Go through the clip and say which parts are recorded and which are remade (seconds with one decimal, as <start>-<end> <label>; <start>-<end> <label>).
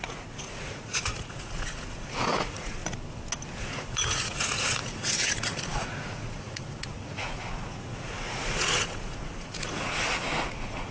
0.0-2.8 remade; 2.8-3.6 recorded; 3.6-10.9 remade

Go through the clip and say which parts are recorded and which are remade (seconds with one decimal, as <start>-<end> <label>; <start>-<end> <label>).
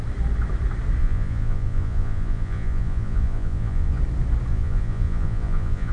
0.0-1.0 recorded; 1.0-4.0 remade; 4.0-4.5 recorded; 4.5-5.9 remade